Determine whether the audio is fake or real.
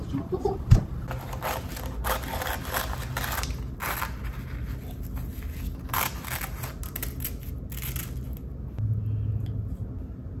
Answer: real